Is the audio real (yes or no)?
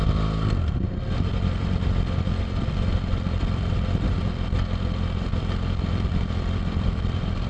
no